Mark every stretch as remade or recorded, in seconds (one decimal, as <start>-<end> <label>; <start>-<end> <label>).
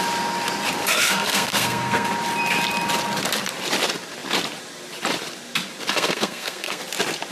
0.0-0.8 recorded; 0.8-2.1 remade; 2.1-5.9 recorded; 5.9-6.8 remade; 6.8-7.3 recorded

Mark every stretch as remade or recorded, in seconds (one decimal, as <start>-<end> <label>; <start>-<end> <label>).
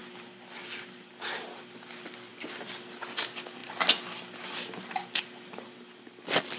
0.0-6.6 recorded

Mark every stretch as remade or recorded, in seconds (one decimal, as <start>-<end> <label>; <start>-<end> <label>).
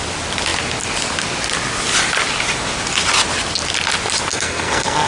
0.0-4.3 recorded; 4.3-5.1 remade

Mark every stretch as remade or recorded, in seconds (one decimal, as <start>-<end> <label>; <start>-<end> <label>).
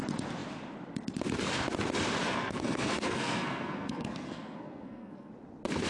0.0-2.2 recorded; 2.2-5.3 remade; 5.3-5.9 recorded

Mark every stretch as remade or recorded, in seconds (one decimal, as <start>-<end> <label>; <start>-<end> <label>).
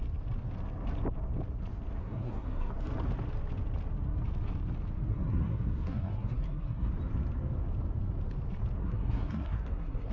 0.0-2.0 recorded; 2.0-2.7 remade; 2.7-5.1 recorded; 5.1-6.9 remade; 6.9-8.8 recorded; 8.8-10.1 remade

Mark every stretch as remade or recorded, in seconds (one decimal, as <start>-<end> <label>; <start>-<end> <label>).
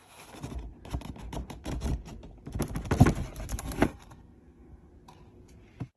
0.0-3.5 recorded; 3.5-4.9 remade; 4.9-6.0 recorded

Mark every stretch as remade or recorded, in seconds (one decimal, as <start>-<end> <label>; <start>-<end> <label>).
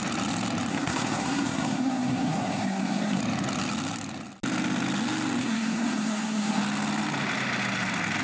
0.0-0.7 recorded; 0.7-3.2 remade; 3.2-5.4 recorded; 5.4-6.6 remade; 6.6-8.2 recorded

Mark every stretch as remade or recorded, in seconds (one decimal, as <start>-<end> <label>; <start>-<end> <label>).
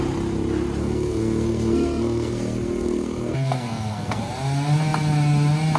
0.0-0.8 recorded; 0.8-4.3 remade; 4.3-5.8 recorded